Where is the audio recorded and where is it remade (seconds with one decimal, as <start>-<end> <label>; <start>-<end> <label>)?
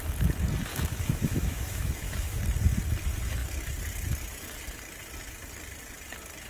0.0-0.7 recorded; 0.7-2.4 remade; 2.4-6.5 recorded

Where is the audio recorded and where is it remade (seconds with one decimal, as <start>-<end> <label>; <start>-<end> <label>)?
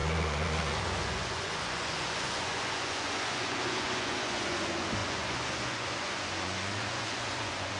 0.0-7.8 remade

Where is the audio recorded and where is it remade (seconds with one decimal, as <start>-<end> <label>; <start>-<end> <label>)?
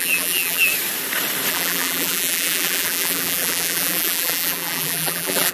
0.0-0.7 remade; 0.7-1.5 recorded; 1.5-5.5 remade